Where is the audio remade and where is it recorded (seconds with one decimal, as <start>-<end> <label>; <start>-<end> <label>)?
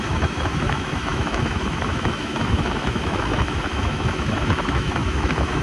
0.0-5.6 remade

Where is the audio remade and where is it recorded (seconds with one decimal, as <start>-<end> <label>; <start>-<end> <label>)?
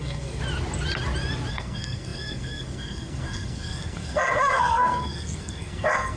0.0-0.4 remade; 0.4-1.5 recorded; 1.5-6.2 remade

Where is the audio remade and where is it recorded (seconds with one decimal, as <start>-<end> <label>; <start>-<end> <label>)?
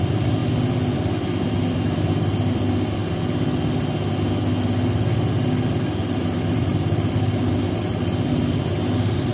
0.0-3.0 remade; 3.0-6.0 recorded; 6.0-9.3 remade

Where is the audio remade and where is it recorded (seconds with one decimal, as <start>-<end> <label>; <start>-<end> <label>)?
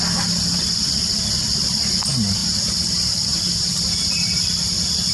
0.0-2.4 recorded; 2.4-4.4 remade; 4.4-5.1 recorded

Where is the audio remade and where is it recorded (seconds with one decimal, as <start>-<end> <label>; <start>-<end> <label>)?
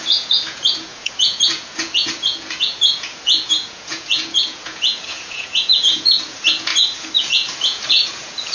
0.0-8.5 remade